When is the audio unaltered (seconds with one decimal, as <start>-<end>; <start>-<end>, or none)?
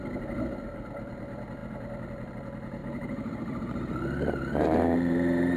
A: 0.0-2.8